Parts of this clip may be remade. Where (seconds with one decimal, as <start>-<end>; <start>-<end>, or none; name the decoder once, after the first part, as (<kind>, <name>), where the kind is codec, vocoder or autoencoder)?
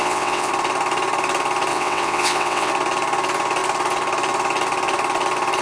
0.0-0.5 (vocoder, WaveNeXt); 1.7-2.7